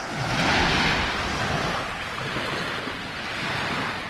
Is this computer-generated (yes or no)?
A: no